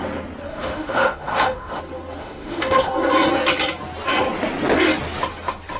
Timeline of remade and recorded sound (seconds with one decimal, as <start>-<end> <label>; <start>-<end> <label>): 0.0-0.5 recorded; 0.5-1.8 remade; 1.8-2.2 recorded; 2.2-2.9 remade; 2.9-5.8 recorded